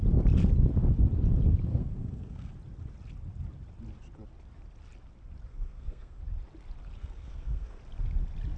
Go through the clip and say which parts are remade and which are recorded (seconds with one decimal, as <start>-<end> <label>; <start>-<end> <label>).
0.0-1.7 recorded; 1.7-2.5 remade; 2.5-5.5 recorded; 5.5-6.2 remade; 6.2-7.0 recorded; 7.0-7.8 remade; 7.8-8.6 recorded